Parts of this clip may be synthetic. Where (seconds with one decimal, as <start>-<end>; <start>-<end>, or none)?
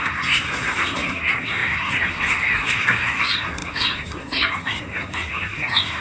0.0-6.0